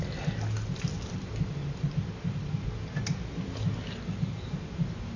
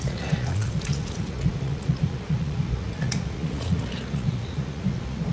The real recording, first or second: first